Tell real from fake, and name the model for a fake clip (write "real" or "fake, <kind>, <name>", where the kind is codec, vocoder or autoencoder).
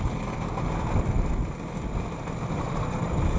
fake, vocoder, BigVGAN v2